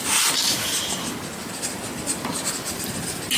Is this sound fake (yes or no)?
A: no